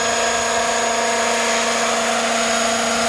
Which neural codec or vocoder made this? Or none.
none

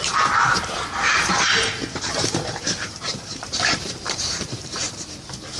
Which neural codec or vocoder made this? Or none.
vocoder, BigVGAN v2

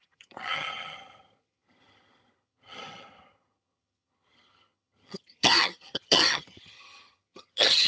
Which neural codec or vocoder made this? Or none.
vocoder, HiFi-GAN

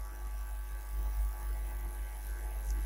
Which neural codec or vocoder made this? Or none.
none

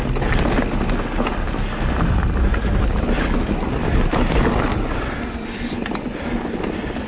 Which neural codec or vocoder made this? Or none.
none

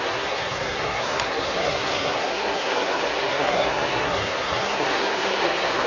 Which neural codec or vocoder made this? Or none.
codec, SNAC